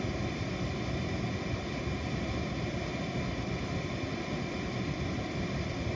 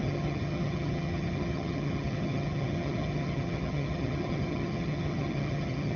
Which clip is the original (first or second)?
first